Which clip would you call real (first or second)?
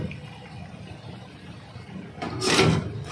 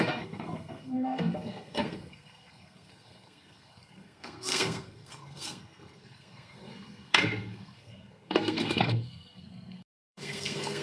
first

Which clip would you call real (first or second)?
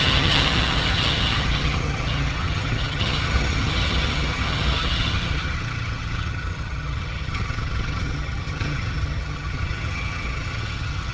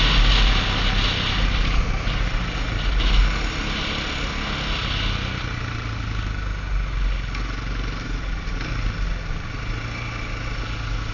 second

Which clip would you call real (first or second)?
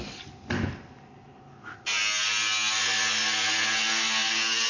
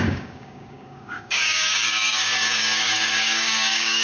first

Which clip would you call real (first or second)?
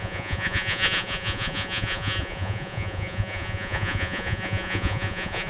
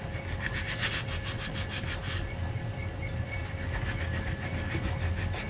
second